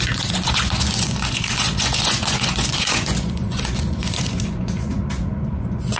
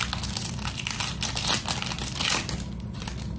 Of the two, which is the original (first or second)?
second